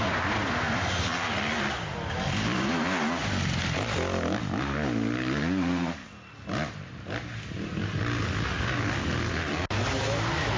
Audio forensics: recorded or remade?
recorded